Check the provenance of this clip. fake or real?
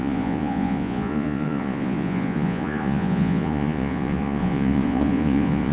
fake